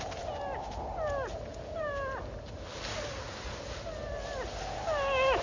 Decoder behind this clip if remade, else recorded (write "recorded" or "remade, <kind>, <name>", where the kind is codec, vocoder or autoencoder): recorded